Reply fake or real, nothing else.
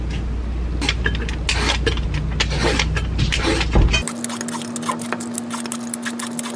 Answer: real